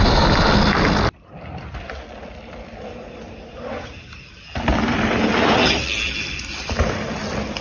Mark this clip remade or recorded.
recorded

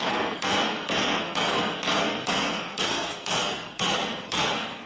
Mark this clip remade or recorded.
remade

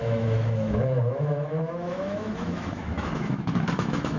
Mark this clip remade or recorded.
remade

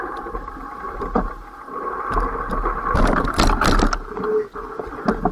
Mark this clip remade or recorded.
recorded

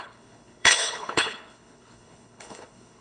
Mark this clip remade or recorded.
remade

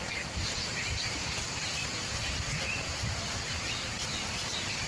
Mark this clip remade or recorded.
remade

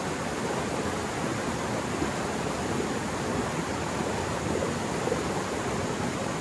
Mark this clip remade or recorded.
recorded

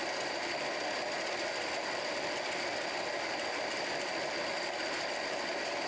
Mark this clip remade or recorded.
recorded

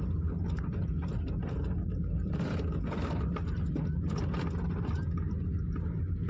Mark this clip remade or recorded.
recorded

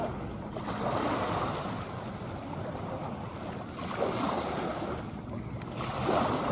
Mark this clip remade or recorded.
recorded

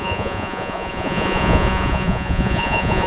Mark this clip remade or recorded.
remade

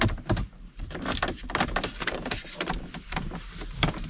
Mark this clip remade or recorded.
remade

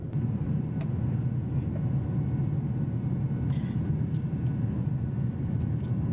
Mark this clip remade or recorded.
recorded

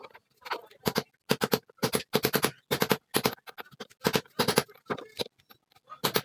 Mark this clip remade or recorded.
recorded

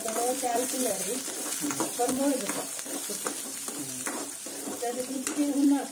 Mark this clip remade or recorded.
remade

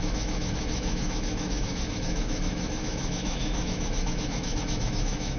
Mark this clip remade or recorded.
remade